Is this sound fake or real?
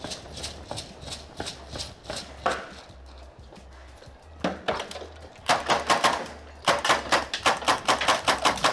real